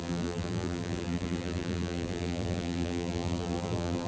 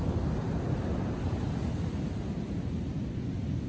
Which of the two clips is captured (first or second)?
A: second